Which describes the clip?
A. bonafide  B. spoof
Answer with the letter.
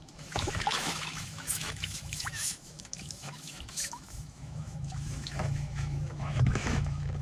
B